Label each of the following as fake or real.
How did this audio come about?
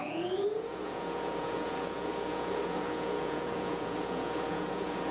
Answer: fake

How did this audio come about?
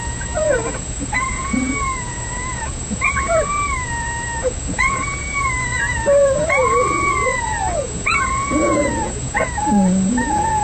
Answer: fake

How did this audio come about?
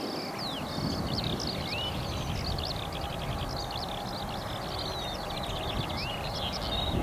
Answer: real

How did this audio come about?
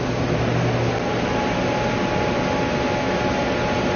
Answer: real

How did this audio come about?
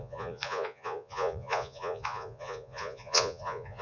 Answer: fake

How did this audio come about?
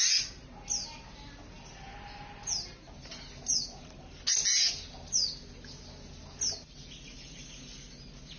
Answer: real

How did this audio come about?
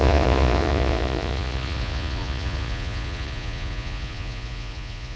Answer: fake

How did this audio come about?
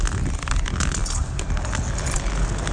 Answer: real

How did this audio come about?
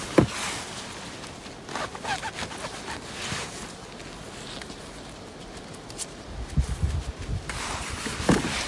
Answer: real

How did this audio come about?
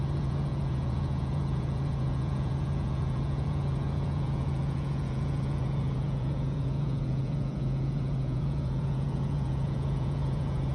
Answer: fake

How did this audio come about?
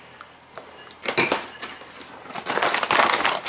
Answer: real